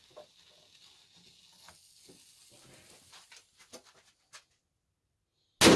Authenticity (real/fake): real